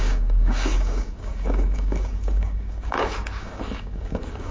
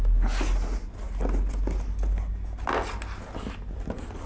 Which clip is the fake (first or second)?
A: first